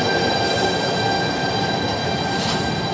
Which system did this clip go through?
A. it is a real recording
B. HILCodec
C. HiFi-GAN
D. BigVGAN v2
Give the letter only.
A